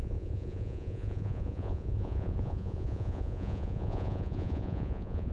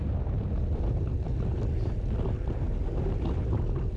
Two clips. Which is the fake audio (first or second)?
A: first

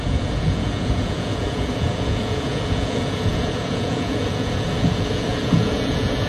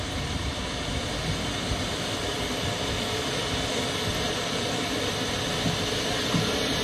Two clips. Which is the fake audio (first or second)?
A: first